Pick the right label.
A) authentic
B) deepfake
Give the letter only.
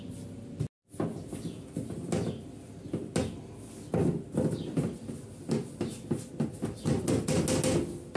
A